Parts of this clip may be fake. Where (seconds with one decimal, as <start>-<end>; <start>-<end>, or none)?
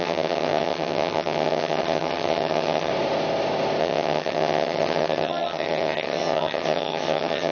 0.0-2.9; 3.8-7.5